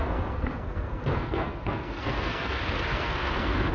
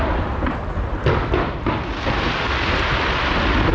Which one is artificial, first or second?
first